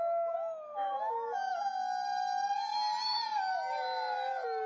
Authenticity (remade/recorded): recorded